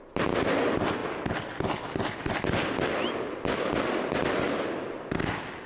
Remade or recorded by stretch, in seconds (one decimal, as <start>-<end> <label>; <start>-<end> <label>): 0.0-5.7 recorded